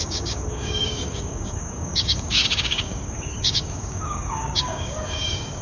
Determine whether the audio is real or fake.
fake